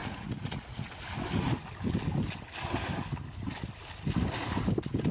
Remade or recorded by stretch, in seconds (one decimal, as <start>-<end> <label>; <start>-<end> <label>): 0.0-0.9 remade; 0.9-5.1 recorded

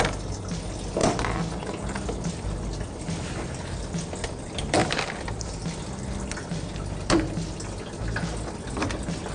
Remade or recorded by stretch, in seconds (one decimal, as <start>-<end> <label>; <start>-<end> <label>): 0.0-9.3 recorded

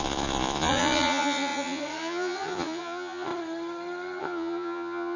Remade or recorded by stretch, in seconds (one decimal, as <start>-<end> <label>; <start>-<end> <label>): 0.0-3.3 remade; 3.3-4.2 recorded; 4.2-5.2 remade